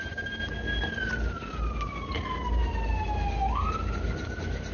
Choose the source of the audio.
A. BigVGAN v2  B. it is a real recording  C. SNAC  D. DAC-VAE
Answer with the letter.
B